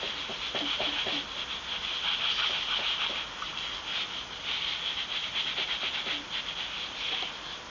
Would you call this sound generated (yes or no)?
no